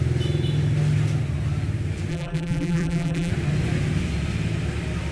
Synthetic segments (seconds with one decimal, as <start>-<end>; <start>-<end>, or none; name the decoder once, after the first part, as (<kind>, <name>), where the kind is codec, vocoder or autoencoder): 2.1-3.3 (vocoder, BigVGAN v2)